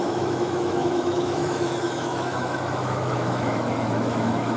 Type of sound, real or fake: fake